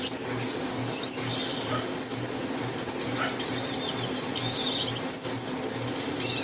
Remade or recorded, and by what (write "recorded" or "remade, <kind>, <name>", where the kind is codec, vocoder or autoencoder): recorded